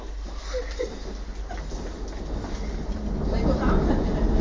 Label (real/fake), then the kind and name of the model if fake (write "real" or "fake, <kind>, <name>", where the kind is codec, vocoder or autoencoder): real